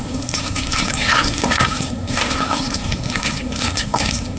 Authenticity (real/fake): fake